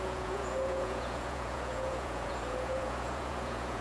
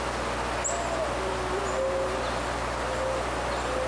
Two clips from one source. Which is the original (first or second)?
second